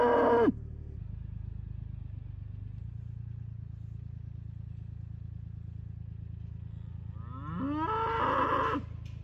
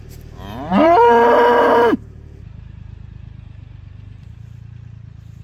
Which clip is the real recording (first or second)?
first